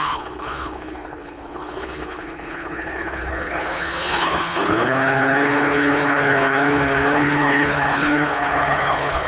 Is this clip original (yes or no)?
no